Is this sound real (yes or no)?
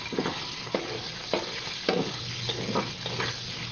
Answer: yes